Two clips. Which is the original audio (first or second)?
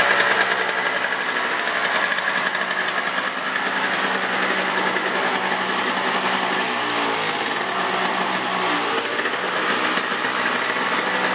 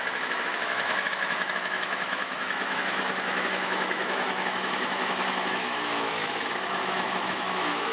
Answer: first